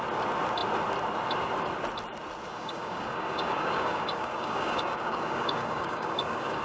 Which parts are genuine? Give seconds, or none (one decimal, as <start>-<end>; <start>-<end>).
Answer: 0.0-2.5